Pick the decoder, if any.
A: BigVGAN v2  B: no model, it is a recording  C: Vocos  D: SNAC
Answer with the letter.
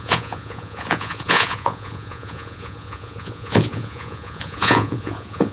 C